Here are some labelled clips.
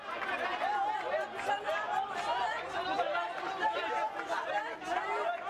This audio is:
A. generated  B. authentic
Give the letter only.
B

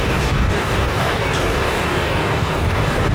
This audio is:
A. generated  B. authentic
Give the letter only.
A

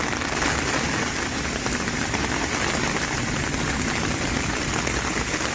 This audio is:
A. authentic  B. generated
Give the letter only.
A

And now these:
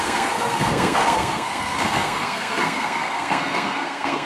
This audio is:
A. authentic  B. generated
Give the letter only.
B